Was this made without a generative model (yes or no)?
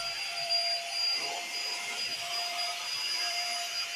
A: no